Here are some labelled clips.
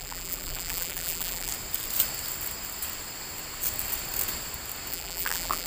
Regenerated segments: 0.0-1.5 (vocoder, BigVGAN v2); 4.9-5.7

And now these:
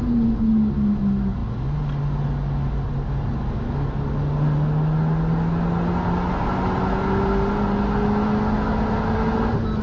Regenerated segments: none

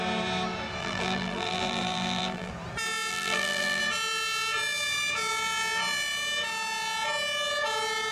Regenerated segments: 0.8-2.5 (vocoder, BigVGAN v2); 3.1-3.8

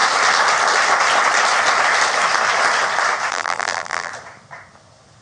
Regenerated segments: 3.3-4.1 (vocoder, BigVGAN v2)

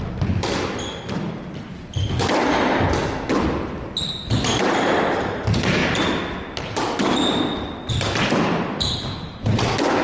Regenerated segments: none

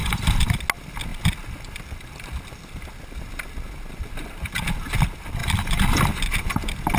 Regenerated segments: 0.0-0.6 (vocoder, BigVGAN v2); 5.4-6.1

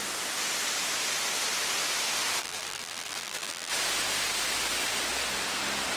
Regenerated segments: 2.4-3.7 (vocoder, BigVGAN v2)

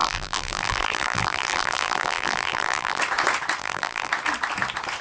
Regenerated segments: 0.0-3.0 (vocoder, BigVGAN v2); 3.6-4.1